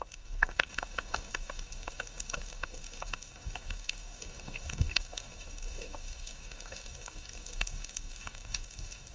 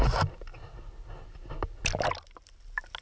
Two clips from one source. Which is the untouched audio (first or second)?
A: second